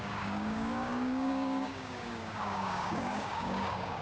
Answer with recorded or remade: remade